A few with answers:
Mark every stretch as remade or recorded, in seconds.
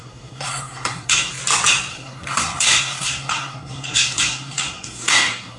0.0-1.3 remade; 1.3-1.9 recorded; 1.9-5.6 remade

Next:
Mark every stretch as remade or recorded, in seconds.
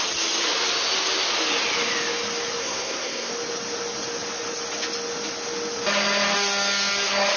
0.0-2.6 recorded; 2.6-3.3 remade; 3.3-7.4 recorded